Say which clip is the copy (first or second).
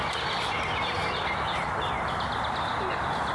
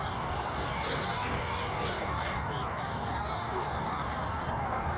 second